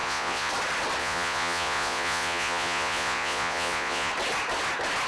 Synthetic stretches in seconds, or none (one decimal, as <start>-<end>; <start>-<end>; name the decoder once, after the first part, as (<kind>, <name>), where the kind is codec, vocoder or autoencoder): 0.0-0.5 (vocoder, Vocos); 1.0-4.1